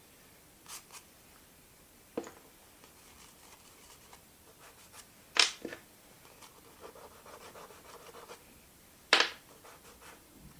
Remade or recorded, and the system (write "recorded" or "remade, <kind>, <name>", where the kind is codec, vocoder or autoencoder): remade, vocoder, BigVGAN v2